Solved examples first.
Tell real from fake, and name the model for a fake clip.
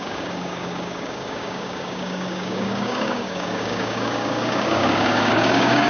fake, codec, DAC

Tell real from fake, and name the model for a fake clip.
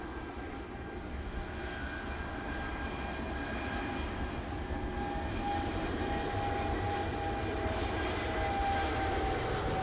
real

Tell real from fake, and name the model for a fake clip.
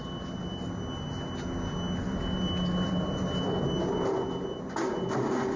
real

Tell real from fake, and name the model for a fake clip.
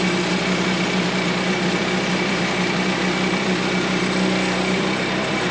fake, vocoder, BigVGAN v2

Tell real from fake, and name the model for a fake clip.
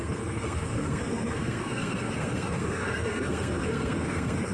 fake, codec, SNAC